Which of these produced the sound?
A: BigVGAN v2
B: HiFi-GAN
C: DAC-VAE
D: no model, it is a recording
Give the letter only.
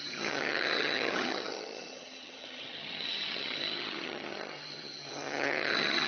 B